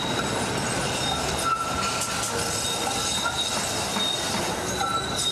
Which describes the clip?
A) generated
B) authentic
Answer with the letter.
B